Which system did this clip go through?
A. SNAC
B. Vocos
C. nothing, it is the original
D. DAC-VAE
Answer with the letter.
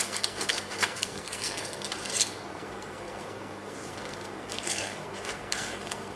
A